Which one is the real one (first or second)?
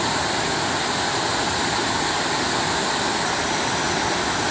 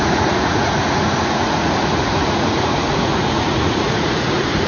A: first